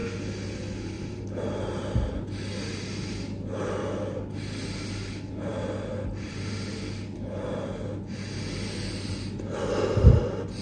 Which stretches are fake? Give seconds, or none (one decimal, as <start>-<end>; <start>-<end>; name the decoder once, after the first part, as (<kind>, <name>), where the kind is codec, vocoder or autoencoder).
none